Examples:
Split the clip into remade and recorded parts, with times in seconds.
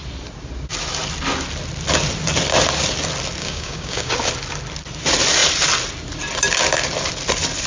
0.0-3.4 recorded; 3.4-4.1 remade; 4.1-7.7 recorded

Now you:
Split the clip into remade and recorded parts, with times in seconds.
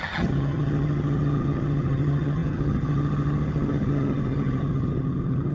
0.0-5.5 remade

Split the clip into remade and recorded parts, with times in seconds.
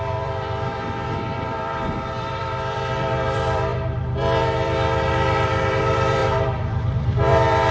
0.0-7.7 remade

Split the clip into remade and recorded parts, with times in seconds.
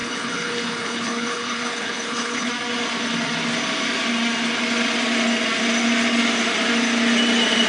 0.0-2.5 remade; 2.5-7.7 recorded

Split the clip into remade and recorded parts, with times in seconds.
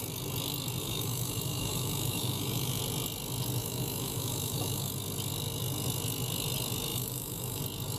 0.0-0.8 recorded; 0.8-2.8 remade; 2.8-3.6 recorded; 3.6-4.9 remade; 4.9-6.9 recorded; 6.9-7.6 remade; 7.6-8.0 recorded